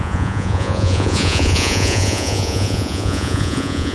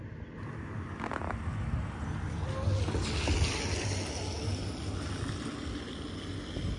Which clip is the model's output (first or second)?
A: first